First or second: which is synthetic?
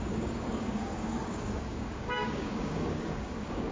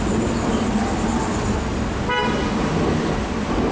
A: first